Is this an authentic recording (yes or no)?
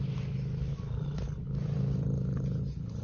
yes